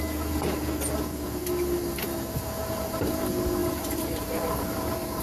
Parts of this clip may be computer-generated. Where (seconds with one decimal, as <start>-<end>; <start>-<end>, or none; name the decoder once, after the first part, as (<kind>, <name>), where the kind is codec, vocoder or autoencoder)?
3.6-5.2 (vocoder, BigVGAN v2)

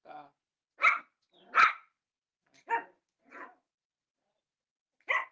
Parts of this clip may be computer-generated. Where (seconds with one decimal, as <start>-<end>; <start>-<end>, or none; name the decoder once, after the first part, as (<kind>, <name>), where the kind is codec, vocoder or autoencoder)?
2.3-4.2 (vocoder, BigVGAN v2)

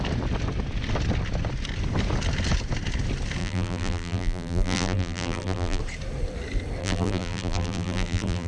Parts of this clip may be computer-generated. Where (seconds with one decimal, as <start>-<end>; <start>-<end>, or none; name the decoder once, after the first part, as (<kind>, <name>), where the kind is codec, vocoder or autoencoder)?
3.4-5.8 (vocoder, BigVGAN v2); 6.8-8.5

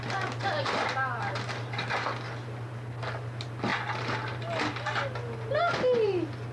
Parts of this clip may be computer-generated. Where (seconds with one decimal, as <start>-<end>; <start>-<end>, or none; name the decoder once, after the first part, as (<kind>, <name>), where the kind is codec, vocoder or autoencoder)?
0.4-0.9 (vocoder, BigVGAN v2)

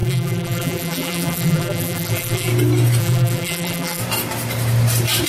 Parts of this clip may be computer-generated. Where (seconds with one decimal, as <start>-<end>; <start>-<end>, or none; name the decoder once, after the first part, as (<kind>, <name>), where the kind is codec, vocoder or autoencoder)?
0.0-2.5 (vocoder, BigVGAN v2); 3.0-4.0

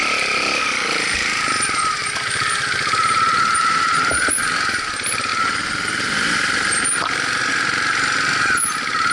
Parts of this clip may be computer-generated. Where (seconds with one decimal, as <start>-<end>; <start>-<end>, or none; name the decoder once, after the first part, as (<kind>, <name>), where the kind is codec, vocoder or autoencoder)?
0.0-9.1 (vocoder, BigVGAN v2)

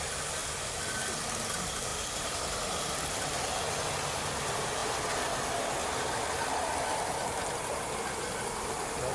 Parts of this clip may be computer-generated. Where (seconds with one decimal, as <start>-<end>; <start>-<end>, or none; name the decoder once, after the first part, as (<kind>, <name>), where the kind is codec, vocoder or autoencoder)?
1.9-3.0 (vocoder, BigVGAN v2)